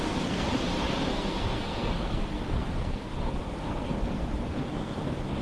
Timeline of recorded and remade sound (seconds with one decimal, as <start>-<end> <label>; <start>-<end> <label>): 0.0-0.5 remade; 0.5-1.1 recorded; 1.1-5.4 remade